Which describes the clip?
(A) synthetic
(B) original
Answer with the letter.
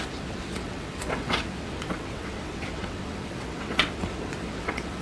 A